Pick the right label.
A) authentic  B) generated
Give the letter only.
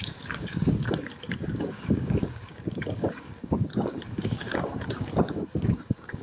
B